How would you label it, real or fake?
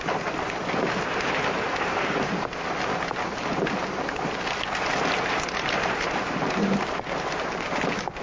real